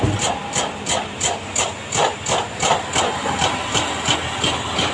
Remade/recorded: recorded